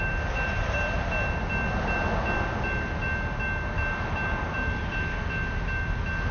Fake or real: real